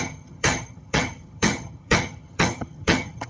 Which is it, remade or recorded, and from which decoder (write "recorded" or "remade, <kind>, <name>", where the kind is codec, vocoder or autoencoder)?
remade, vocoder, HiFi-GAN